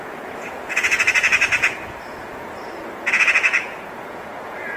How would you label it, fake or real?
fake